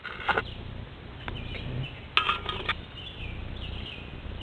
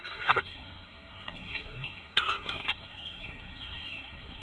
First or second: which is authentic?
first